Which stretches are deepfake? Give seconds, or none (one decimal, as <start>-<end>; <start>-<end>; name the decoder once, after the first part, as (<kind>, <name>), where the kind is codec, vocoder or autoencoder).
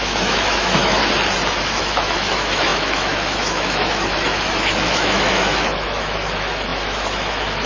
0.0-1.0 (autoencoder, DAC-VAE); 1.6-7.7